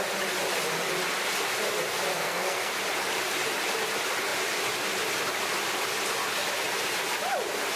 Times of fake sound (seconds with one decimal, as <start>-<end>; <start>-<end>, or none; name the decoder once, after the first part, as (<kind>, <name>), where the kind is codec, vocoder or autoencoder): 2.1-2.7 (codec, SNAC)